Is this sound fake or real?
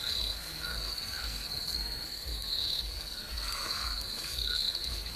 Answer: fake